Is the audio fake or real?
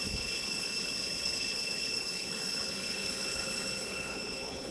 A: fake